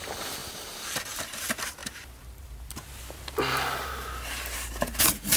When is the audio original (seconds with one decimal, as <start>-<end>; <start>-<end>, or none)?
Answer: 0.0-0.4; 1.2-1.8; 5.0-5.4